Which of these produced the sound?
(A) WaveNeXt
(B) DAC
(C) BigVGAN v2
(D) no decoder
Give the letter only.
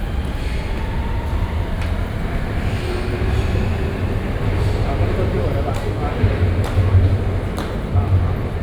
D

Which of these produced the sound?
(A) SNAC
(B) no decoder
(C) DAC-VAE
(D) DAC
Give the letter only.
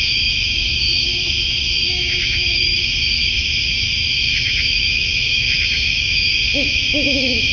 C